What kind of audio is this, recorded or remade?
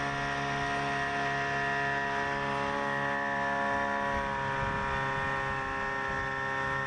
recorded